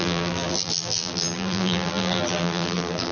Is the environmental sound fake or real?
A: fake